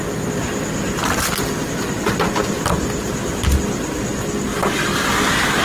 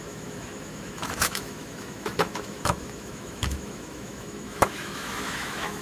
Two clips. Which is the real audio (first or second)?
first